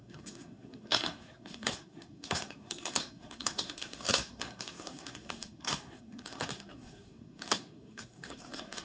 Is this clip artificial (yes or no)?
yes